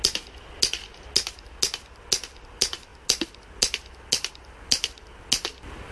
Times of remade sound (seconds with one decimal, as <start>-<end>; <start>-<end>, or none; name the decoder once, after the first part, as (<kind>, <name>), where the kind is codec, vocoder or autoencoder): none